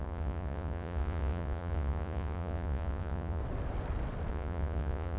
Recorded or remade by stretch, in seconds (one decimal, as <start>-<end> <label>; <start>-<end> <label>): 0.0-3.4 remade; 3.4-4.3 recorded; 4.3-5.2 remade